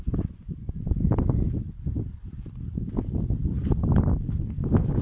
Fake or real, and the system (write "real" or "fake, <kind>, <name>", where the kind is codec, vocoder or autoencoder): real